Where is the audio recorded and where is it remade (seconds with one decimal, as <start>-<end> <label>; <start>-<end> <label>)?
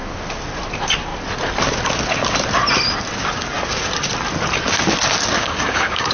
0.0-5.4 recorded; 5.4-6.1 remade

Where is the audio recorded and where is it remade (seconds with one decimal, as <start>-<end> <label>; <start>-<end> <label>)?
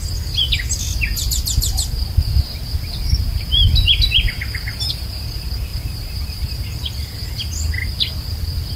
0.0-5.7 recorded; 5.7-6.2 remade; 6.2-8.8 recorded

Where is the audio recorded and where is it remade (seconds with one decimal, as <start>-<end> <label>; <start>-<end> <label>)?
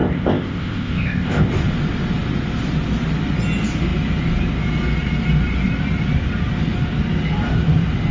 0.0-1.5 remade; 1.5-8.1 recorded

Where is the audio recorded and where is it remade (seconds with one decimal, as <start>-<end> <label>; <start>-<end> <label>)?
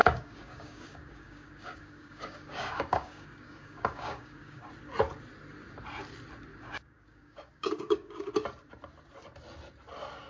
0.0-4.7 remade; 4.7-6.5 recorded; 6.5-8.3 remade; 8.3-10.3 recorded